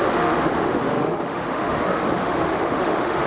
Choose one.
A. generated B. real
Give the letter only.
A